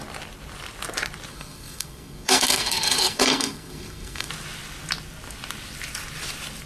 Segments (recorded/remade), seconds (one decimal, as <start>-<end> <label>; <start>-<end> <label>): 0.0-1.3 recorded; 1.3-4.3 remade; 4.3-6.7 recorded